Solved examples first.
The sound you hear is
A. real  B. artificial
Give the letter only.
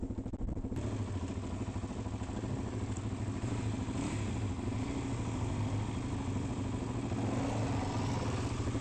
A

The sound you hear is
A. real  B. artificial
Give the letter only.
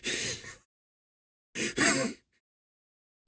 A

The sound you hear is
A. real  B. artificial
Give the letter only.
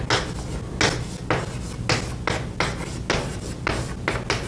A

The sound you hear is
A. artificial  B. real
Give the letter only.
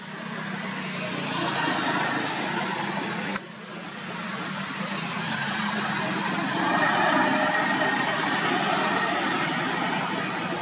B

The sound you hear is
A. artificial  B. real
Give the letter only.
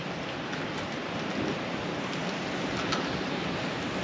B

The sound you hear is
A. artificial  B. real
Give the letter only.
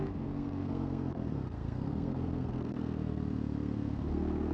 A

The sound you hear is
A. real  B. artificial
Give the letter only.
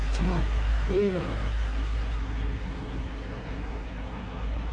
B